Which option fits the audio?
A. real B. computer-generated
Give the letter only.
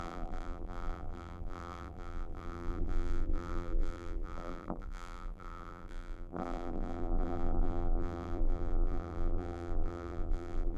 B